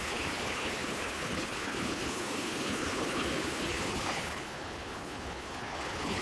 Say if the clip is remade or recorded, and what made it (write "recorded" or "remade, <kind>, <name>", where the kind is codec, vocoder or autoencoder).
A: remade, codec, HILCodec